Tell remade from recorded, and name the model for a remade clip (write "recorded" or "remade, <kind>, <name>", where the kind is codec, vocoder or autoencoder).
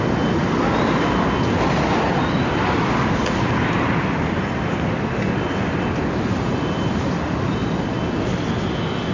recorded